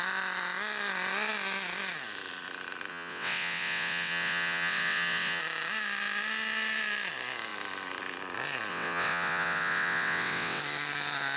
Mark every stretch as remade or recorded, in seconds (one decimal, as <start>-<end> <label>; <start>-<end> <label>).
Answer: 0.0-2.9 recorded; 2.9-5.4 remade; 5.4-8.7 recorded; 8.7-10.6 remade; 10.6-11.4 recorded